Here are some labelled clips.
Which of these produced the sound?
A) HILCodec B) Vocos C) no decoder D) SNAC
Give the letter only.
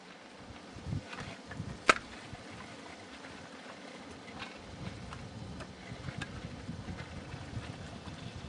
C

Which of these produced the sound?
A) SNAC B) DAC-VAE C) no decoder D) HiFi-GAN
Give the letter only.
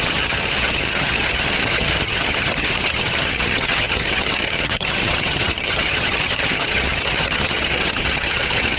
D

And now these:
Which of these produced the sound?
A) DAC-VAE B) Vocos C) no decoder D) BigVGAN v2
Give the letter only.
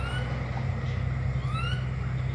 C